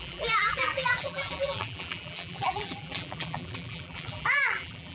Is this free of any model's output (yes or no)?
no